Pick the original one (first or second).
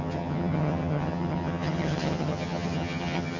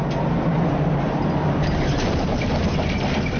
second